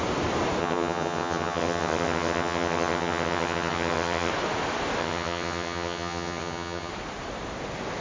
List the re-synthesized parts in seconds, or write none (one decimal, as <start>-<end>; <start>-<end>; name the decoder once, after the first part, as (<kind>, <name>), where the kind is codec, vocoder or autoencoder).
0.6-4.3 (vocoder, HiFi-GAN); 5.0-6.9